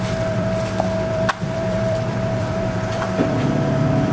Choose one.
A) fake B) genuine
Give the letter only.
A